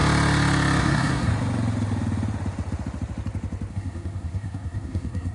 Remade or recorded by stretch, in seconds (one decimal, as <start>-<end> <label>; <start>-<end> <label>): 0.0-0.8 recorded; 0.8-1.3 remade; 1.3-3.7 recorded; 3.7-5.3 remade